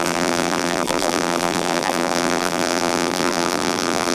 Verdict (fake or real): fake